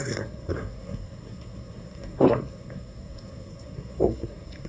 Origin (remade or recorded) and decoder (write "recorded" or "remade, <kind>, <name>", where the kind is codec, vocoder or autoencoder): remade, codec, SNAC